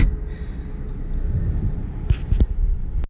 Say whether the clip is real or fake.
real